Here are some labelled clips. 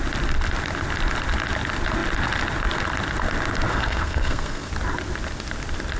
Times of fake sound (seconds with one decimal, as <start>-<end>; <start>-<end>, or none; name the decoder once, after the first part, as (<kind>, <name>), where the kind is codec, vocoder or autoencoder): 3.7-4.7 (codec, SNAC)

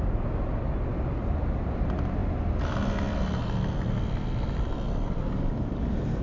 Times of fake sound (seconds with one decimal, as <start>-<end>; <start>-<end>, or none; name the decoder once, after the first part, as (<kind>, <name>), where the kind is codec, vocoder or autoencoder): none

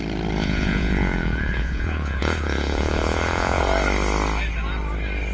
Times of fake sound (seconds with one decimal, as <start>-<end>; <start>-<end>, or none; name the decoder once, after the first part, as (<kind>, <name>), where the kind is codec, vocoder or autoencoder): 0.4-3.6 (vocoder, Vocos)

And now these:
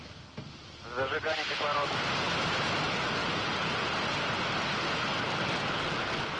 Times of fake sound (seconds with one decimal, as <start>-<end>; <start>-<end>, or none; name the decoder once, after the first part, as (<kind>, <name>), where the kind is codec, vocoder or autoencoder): 3.2-3.9 (vocoder, Vocos)

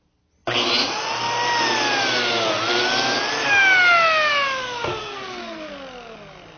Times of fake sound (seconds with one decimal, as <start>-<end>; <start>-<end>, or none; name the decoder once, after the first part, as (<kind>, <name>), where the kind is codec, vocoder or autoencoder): 5.0-5.7 (codec, SNAC)

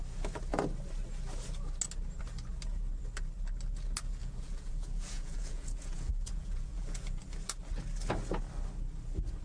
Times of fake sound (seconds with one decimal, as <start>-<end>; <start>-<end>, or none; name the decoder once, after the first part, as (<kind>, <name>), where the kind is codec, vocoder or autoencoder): 4.2-7.2 (vocoder, Vocos)

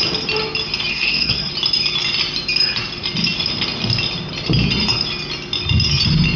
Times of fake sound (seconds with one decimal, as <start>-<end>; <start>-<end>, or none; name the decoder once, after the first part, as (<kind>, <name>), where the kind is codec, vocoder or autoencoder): 0.9-1.5 (codec, SNAC)

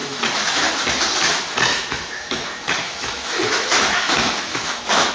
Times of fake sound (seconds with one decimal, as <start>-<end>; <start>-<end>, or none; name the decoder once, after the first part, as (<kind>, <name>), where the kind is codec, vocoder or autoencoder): 0.0-0.7 (autoencoder, DAC-VAE); 1.7-5.1